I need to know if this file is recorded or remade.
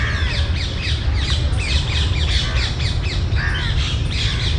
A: recorded